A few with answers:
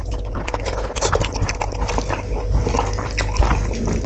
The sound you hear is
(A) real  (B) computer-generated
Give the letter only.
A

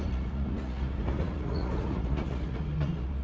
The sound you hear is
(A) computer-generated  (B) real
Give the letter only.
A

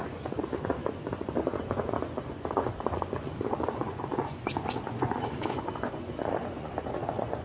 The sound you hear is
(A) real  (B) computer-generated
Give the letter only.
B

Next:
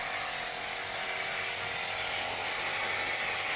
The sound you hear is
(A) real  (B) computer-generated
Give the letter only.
A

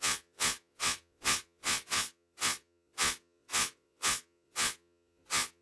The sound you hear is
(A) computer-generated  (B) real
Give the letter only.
A